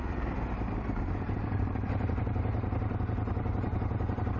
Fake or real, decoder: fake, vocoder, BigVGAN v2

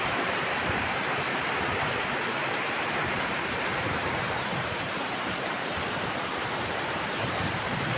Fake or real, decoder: fake, vocoder, BigVGAN v2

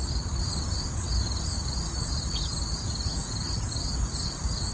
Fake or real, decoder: real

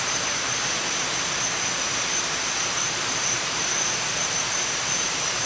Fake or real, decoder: fake, vocoder, BigVGAN v2